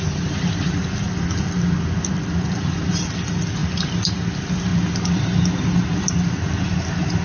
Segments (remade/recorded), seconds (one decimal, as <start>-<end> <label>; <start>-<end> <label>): 0.0-7.2 recorded